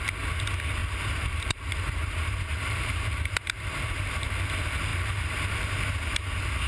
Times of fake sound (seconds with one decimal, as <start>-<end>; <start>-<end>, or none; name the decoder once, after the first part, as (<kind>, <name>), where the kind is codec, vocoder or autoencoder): 0.8-4.4 (vocoder, BigVGAN v2); 4.9-5.8